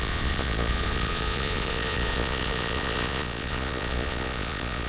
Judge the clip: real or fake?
fake